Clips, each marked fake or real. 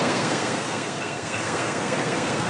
fake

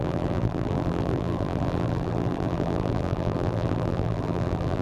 fake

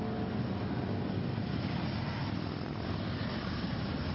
real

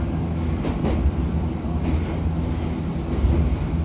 real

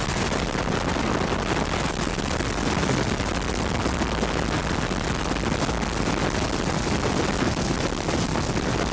real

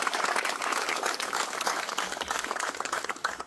fake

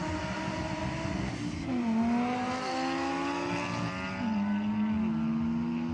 real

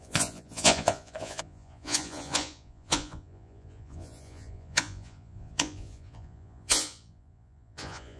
fake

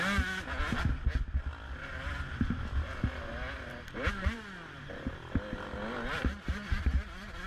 real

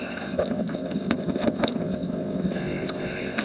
fake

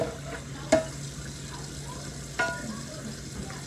real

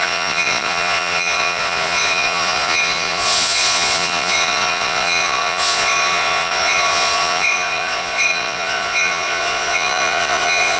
fake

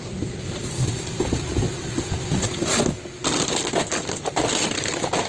real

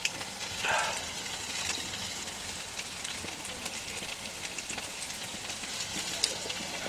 fake